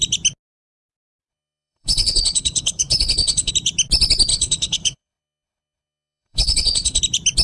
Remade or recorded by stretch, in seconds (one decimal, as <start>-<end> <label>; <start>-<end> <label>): 0.0-1.3 recorded; 1.3-3.5 remade; 3.5-4.3 recorded; 4.3-7.0 remade; 7.0-7.4 recorded